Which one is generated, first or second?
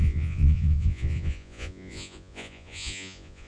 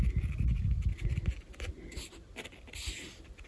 first